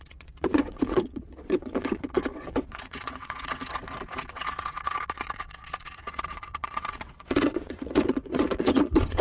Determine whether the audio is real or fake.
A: fake